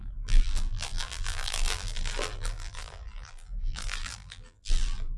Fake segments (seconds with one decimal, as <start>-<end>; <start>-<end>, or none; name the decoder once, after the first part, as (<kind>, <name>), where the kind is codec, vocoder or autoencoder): 0.0-5.2 (vocoder, BigVGAN v2)